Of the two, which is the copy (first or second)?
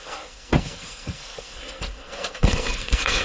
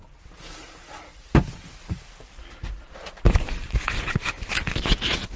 first